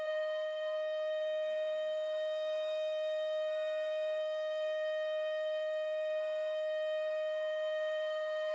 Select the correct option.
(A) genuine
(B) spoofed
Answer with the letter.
B